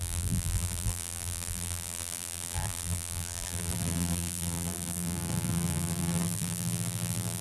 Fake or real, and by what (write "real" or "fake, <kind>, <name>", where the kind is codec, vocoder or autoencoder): fake, vocoder, BigVGAN v2